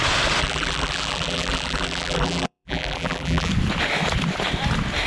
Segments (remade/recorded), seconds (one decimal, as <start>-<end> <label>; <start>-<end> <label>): 0.0-0.4 recorded; 0.4-3.5 remade; 3.5-5.1 recorded